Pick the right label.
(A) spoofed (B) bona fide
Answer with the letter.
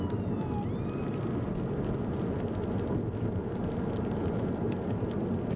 B